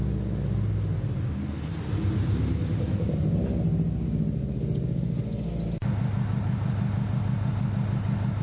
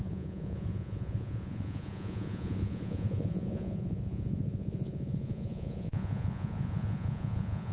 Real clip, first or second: first